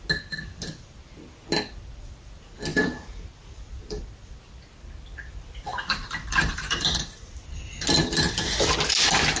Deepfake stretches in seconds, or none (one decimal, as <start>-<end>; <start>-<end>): 2.7-3.6; 5.7-7.3